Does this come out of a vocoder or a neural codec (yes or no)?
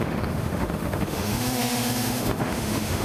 yes